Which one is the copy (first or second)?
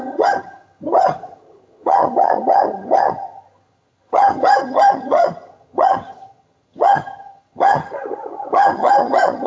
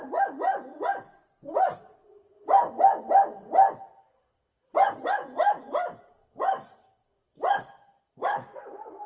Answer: first